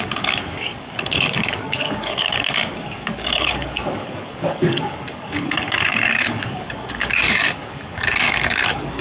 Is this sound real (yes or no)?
no